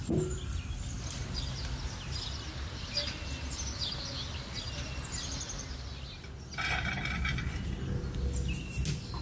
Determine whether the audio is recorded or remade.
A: recorded